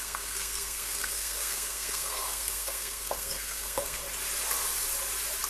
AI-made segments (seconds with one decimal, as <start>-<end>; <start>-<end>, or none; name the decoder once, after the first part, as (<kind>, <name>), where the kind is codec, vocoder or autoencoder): 0.0-4.0 (codec, SNAC)